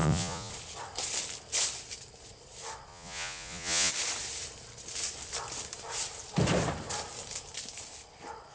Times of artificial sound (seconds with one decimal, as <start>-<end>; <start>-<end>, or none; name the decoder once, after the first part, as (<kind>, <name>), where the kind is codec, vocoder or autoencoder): 0.0-0.5 (vocoder, Vocos); 2.9-3.9